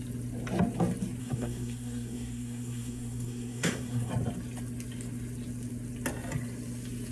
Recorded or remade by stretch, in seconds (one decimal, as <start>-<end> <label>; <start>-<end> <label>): 0.0-1.2 recorded; 1.2-4.1 remade; 4.1-7.1 recorded